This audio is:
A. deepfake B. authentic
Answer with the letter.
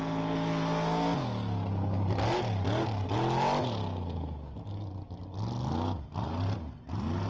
B